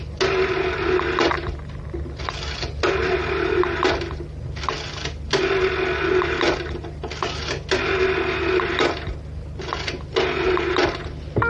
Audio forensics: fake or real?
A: real